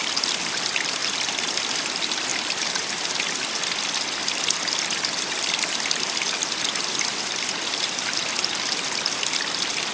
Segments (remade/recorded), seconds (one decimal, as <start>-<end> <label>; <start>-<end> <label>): 0.0-9.9 recorded